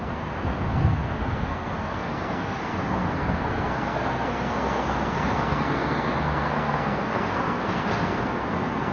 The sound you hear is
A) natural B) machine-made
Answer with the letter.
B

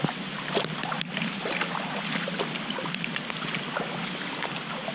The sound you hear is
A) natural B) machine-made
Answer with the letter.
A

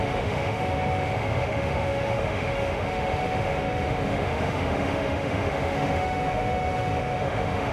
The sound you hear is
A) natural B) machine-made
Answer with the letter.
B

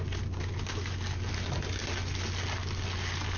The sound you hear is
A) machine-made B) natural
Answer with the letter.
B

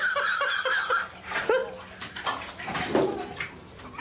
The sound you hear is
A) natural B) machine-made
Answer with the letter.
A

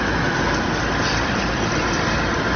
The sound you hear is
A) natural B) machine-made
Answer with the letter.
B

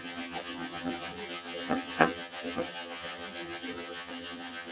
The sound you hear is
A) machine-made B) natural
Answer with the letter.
A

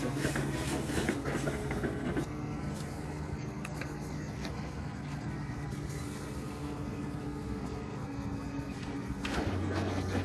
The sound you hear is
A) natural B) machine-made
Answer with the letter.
B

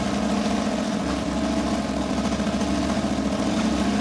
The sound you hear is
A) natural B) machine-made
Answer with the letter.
A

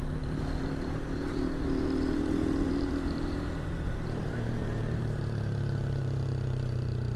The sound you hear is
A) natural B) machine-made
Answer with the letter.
B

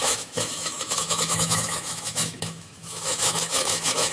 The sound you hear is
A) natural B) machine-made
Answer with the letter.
B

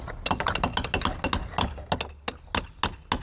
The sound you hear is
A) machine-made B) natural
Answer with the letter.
B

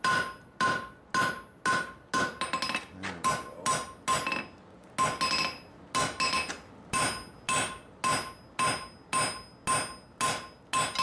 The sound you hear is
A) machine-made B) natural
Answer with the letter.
B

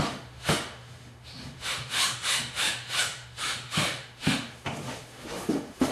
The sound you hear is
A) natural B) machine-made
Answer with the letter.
B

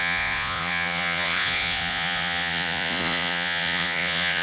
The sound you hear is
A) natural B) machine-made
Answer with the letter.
B